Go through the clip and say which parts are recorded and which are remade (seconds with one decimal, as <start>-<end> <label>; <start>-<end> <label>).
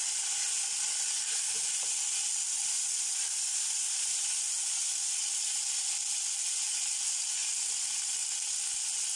0.0-9.2 recorded